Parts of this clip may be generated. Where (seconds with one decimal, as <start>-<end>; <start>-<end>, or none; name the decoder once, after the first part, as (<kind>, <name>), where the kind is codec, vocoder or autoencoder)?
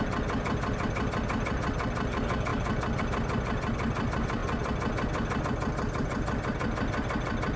none